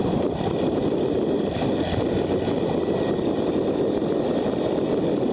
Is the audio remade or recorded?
remade